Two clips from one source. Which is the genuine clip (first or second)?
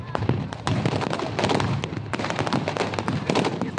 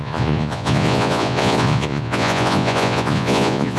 first